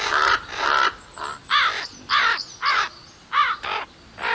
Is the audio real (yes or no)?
yes